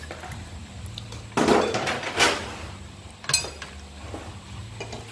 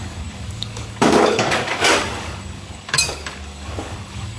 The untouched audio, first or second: first